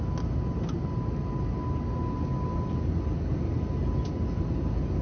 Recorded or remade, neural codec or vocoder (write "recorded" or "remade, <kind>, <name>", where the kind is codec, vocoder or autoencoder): recorded